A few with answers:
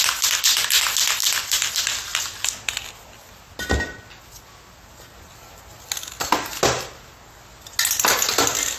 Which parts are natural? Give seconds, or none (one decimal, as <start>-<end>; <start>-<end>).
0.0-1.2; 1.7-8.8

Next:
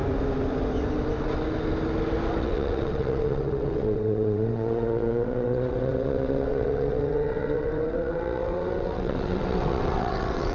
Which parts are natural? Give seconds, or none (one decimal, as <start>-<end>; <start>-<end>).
0.0-2.4

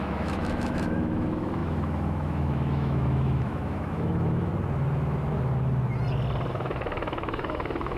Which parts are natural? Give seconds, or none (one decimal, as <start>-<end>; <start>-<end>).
4.5-6.5